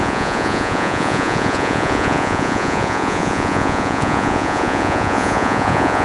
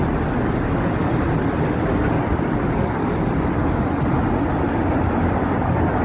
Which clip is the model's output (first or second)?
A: first